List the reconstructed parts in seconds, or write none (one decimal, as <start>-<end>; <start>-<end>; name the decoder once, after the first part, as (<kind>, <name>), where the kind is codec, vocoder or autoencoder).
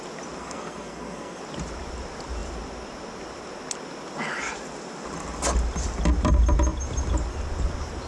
0.4-1.4 (codec, SNAC)